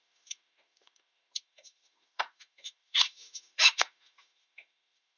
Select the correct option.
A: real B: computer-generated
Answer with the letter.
B